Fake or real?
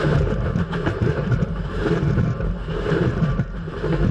fake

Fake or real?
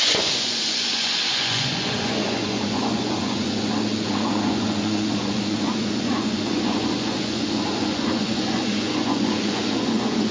fake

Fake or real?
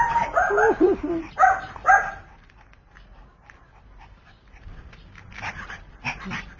fake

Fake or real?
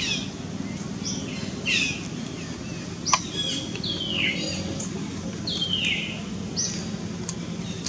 real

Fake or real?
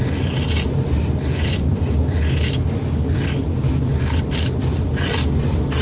real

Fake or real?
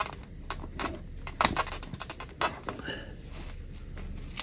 real